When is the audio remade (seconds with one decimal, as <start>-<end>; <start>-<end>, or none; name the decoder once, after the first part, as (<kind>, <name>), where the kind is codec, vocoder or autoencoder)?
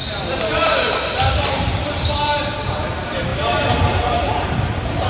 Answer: 1.3-5.1 (vocoder, BigVGAN v2)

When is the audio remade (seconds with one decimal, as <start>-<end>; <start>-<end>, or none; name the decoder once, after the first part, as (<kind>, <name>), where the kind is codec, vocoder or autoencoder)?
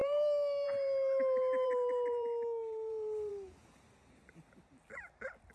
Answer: 0.0-3.3 (vocoder, BigVGAN v2)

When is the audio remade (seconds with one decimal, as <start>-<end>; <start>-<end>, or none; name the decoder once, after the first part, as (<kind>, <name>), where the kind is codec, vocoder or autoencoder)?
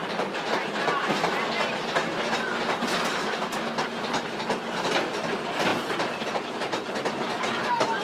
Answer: 0.0-0.7 (vocoder, BigVGAN v2); 5.7-6.9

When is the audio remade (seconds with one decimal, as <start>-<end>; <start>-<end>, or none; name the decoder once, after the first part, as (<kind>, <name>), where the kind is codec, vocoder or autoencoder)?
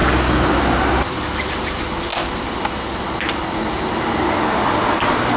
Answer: none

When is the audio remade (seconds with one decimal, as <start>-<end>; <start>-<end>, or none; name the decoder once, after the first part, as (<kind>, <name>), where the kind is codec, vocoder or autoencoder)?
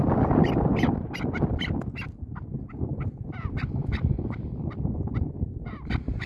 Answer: 2.9-5.7 (vocoder, BigVGAN v2)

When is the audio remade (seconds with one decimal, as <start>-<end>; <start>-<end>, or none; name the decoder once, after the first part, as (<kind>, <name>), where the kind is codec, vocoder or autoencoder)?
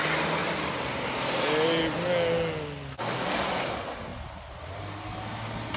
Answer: 0.4-0.9 (vocoder, BigVGAN v2); 4.1-5.0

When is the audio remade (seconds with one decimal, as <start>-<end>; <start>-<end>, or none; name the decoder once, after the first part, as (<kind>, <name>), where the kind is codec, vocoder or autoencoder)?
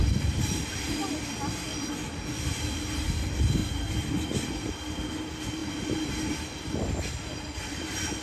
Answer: 0.0-1.1 (vocoder, BigVGAN v2)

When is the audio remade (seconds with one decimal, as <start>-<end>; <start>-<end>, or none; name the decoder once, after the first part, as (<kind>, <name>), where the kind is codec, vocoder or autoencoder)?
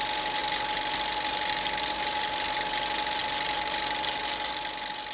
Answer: 3.2-4.2 (vocoder, BigVGAN v2)